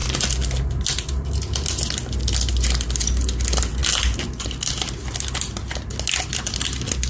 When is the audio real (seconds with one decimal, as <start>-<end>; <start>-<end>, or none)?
0.0-7.1